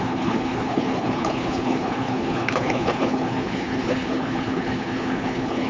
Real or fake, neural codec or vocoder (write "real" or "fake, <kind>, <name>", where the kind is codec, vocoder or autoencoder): fake, codec, HILCodec